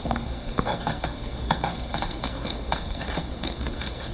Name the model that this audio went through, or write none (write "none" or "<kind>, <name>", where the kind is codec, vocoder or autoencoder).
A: codec, SNAC